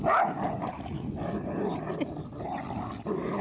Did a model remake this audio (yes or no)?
no